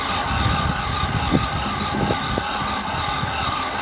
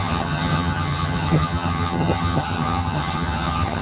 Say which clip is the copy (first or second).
second